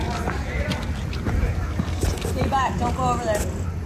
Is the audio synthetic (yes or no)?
no